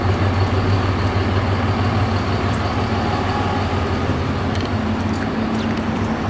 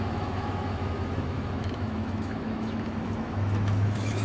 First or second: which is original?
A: first